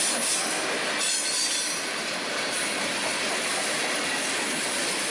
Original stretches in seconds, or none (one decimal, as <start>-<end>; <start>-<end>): 0.0-5.1